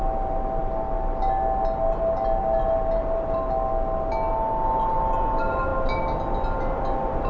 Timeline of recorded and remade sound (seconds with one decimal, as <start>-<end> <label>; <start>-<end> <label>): 0.0-7.3 recorded